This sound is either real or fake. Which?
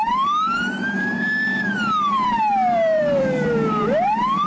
fake